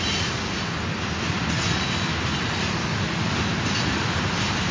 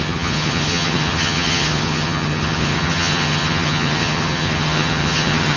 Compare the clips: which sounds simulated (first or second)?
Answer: second